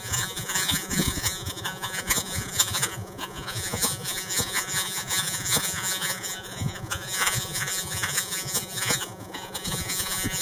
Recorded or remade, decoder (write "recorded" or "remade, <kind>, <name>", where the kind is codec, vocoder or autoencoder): remade, vocoder, Vocos